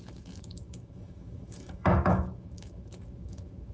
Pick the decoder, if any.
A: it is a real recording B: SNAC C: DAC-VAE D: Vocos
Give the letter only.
C